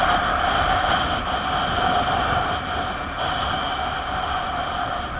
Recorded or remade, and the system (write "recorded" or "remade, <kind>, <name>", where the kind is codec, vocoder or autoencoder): recorded